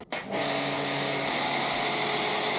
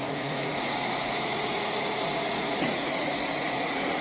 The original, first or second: first